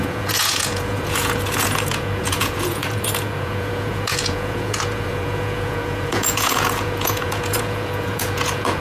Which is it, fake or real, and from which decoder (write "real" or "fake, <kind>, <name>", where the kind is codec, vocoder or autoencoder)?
fake, vocoder, Vocos